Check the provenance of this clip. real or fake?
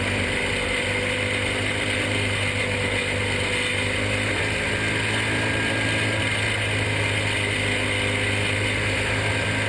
real